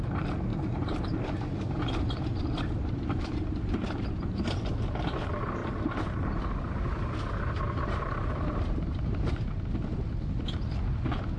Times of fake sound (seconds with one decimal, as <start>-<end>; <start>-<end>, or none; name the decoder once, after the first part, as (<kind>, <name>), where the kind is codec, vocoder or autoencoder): 0.5-4.4 (vocoder, BigVGAN v2); 5.6-9.5